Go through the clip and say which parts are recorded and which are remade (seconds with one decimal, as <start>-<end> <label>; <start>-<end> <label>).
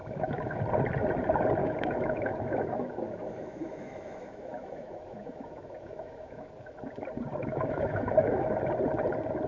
0.0-0.6 remade; 0.6-1.6 recorded; 1.6-6.5 remade; 6.5-7.4 recorded; 7.4-8.6 remade; 8.6-9.5 recorded